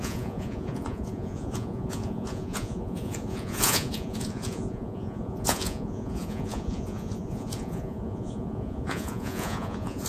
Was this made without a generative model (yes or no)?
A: no